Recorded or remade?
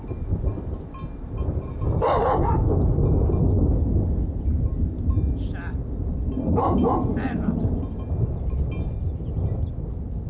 recorded